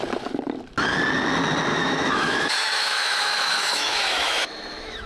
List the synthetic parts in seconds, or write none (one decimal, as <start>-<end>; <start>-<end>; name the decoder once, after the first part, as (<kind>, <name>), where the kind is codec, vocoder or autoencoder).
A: 1.7-5.1 (autoencoder, DAC-VAE)